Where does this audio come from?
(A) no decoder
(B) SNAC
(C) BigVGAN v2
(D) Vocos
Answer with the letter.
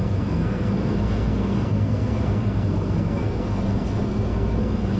B